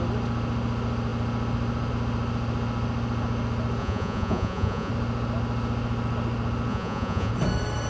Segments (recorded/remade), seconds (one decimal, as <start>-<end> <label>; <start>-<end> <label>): 0.0-3.8 recorded; 3.8-4.9 remade; 4.9-6.7 recorded; 6.7-7.3 remade; 7.3-7.9 recorded